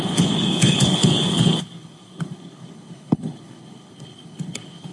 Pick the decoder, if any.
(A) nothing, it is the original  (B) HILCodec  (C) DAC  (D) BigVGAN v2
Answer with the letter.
B